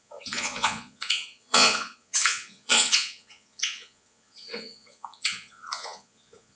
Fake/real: fake